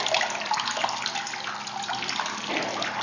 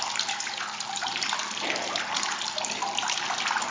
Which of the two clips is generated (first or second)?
second